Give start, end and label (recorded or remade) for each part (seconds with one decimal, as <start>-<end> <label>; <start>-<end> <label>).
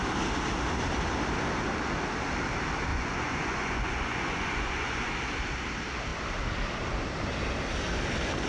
0.0-2.9 recorded; 2.9-5.1 remade; 5.1-8.5 recorded